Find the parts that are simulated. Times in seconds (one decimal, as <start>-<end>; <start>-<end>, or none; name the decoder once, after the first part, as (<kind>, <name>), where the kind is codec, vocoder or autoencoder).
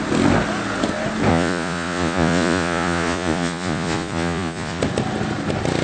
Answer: 1.3-4.8 (vocoder, Vocos)